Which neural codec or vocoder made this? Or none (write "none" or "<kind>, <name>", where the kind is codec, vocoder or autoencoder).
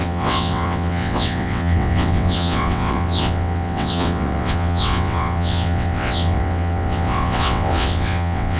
vocoder, WaveNeXt